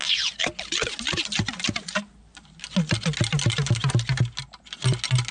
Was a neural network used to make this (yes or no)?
no